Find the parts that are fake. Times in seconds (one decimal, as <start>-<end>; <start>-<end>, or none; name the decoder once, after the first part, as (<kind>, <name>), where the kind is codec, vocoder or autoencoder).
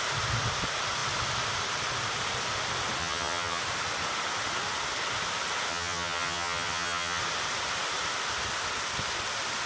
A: 3.0-3.6 (vocoder, HiFi-GAN); 5.7-7.2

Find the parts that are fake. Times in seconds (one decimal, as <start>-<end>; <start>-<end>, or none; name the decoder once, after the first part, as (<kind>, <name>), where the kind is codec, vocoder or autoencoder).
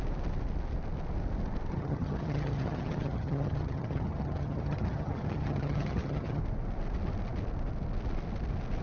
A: 1.7-6.4 (vocoder, HiFi-GAN)